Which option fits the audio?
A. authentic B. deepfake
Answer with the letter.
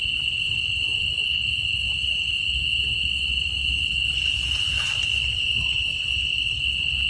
A